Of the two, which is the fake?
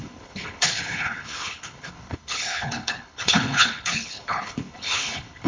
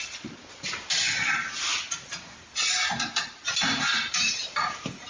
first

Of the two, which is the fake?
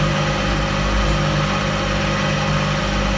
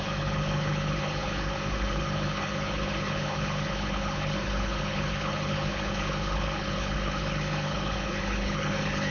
second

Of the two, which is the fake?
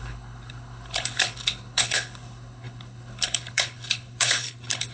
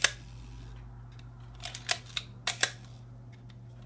first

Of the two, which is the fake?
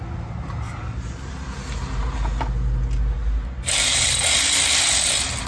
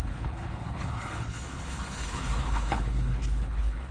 second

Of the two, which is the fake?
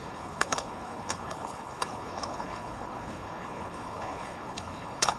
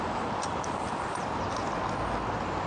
first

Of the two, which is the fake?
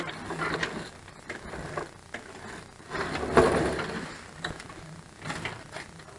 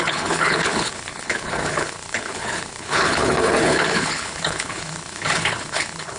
second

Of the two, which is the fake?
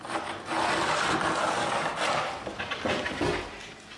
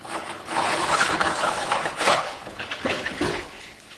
second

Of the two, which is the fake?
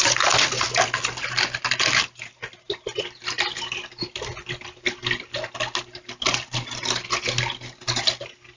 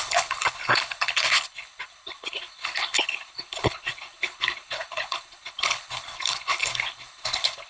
second